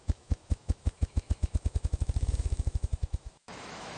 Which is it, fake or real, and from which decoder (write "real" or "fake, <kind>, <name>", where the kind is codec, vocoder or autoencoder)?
fake, autoencoder, DAC-VAE